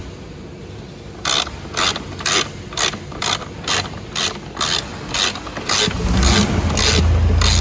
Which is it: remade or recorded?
recorded